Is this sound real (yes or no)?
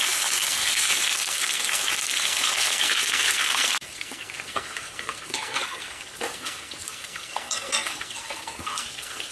no